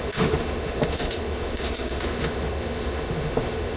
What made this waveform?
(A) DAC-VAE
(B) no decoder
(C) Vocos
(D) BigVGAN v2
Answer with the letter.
A